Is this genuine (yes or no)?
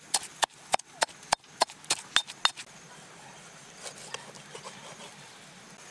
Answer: yes